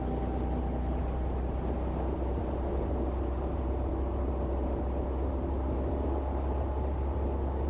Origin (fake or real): real